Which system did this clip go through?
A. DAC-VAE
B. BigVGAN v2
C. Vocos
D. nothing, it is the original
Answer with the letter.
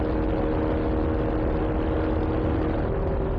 D